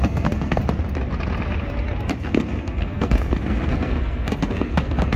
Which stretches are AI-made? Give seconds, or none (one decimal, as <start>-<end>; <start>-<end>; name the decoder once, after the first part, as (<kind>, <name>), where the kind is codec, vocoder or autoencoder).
0.0-0.6 (codec, SNAC); 2.2-5.2